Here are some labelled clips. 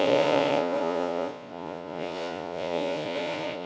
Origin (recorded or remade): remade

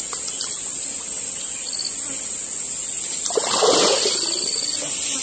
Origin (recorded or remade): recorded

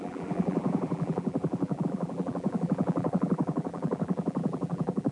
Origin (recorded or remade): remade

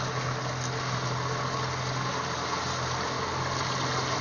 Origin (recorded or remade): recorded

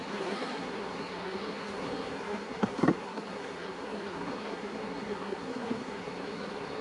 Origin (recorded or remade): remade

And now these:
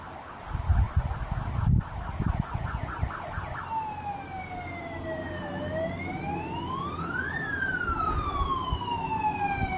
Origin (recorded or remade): recorded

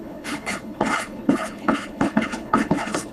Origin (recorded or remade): remade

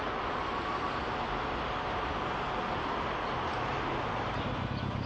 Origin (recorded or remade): recorded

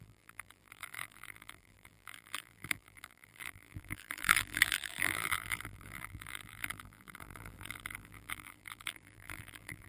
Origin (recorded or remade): remade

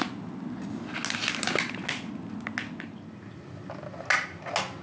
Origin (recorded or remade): recorded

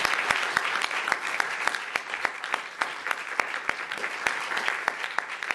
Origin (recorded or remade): recorded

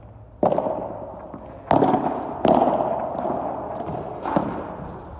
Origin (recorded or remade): recorded